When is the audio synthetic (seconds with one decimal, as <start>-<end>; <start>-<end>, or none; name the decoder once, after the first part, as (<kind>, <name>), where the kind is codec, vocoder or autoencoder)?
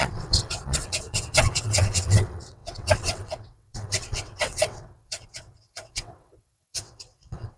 0.0-7.6 (vocoder, WaveNeXt)